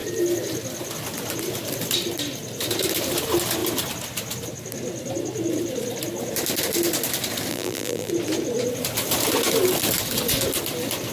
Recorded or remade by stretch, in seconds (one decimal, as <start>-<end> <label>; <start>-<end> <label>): 0.0-7.5 recorded; 7.5-8.1 remade; 8.1-11.1 recorded